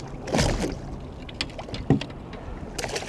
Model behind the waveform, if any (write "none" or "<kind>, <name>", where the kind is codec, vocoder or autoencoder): none